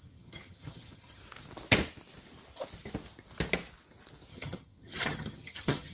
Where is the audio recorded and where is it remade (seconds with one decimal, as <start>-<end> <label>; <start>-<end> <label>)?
0.0-1.2 remade; 1.2-4.3 recorded; 4.3-5.9 remade